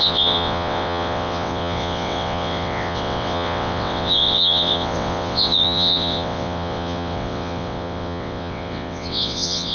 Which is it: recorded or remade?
remade